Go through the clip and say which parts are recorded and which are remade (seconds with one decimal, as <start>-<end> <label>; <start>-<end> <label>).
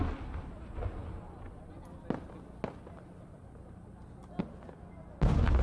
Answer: 0.0-5.6 recorded